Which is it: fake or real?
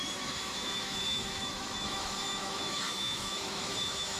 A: fake